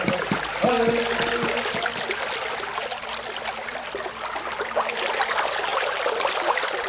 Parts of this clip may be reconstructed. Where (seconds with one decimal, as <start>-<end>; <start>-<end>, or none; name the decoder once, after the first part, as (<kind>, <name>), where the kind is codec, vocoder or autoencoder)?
none